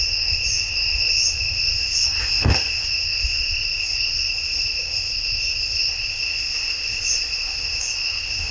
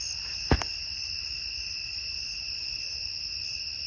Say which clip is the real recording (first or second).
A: second